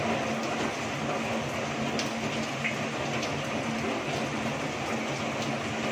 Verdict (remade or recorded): recorded